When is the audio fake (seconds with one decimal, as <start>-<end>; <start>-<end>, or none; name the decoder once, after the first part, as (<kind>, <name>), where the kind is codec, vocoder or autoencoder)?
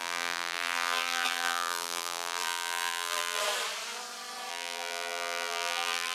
0.0-3.4 (vocoder, BigVGAN v2); 4.5-6.1